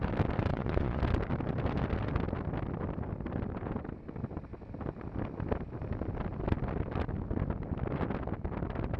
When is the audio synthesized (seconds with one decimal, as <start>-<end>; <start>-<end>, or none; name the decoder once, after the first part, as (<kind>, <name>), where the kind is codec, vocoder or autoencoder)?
0.5-1.0 (vocoder, Vocos)